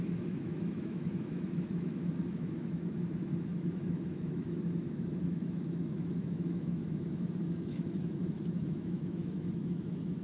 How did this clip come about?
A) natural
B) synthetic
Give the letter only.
B